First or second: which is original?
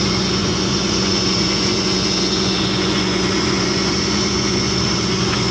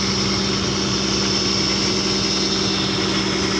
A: second